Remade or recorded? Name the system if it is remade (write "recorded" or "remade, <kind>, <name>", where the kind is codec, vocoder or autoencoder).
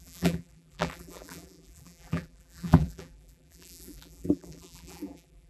remade, vocoder, BigVGAN v2